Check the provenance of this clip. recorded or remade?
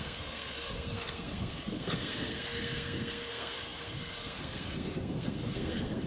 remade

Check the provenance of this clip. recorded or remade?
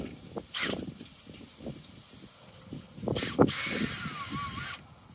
recorded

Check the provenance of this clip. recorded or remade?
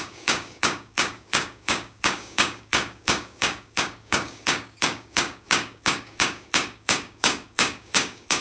remade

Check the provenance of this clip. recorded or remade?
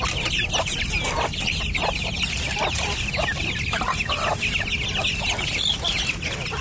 recorded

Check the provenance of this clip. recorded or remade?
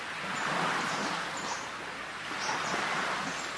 recorded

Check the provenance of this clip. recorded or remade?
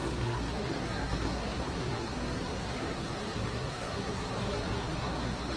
remade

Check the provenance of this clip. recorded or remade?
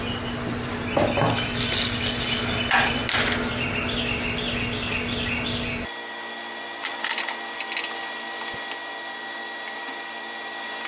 recorded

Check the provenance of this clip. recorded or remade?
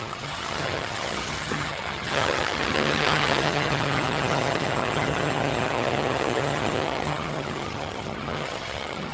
remade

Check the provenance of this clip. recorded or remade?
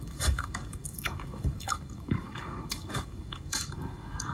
remade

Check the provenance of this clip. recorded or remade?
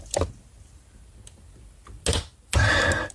recorded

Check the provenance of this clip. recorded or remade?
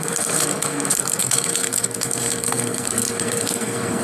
remade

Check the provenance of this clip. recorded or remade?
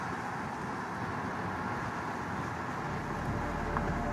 recorded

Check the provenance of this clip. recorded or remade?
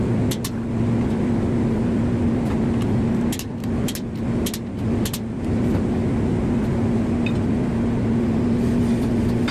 recorded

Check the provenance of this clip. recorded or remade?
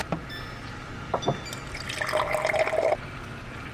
recorded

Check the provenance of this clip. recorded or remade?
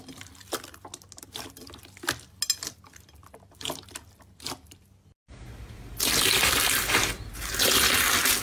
recorded